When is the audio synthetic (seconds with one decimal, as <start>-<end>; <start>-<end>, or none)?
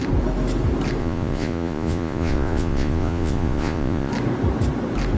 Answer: 1.0-4.1